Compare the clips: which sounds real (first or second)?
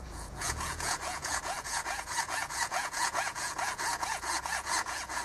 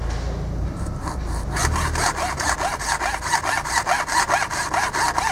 second